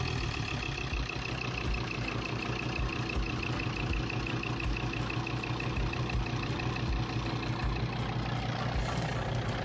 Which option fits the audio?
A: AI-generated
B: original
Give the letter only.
B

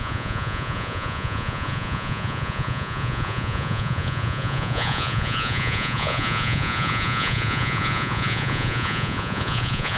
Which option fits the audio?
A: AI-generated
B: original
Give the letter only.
A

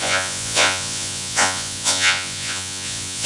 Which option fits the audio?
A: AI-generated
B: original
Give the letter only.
A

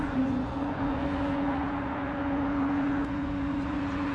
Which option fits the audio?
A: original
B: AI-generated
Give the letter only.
B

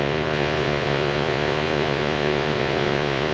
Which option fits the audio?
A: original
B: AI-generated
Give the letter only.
B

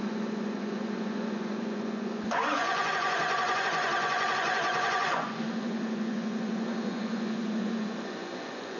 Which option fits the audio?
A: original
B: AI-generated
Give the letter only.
B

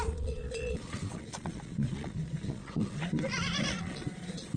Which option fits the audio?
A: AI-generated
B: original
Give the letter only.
A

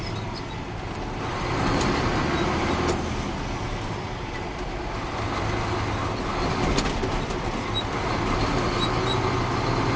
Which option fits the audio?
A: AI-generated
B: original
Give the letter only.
B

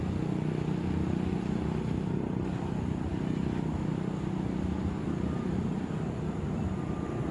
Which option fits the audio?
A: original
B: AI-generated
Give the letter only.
A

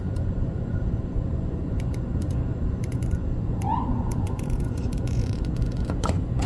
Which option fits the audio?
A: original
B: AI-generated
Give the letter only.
B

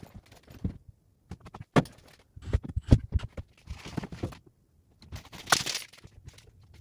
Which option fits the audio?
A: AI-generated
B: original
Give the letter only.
B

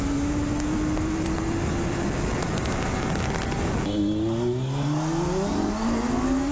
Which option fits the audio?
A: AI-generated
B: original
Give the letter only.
B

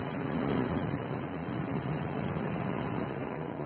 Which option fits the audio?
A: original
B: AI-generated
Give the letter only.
B